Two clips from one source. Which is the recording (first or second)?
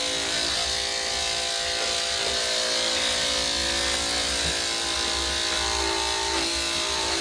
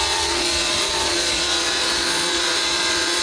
first